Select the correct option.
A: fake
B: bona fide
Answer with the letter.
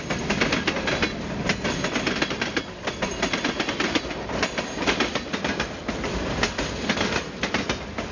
B